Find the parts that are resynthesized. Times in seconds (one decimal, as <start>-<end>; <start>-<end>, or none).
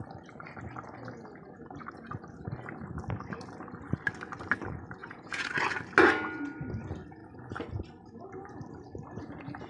5.0-5.5